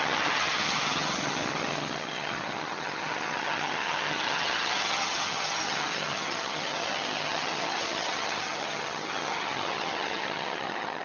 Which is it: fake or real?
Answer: fake